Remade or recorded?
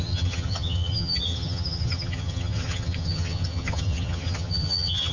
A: remade